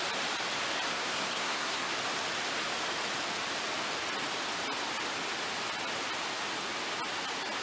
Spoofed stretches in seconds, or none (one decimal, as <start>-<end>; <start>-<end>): 0.9-1.9